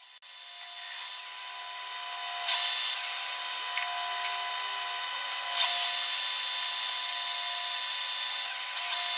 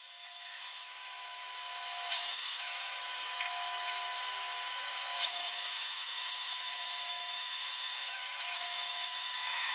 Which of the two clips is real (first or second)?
first